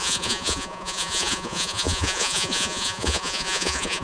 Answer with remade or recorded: remade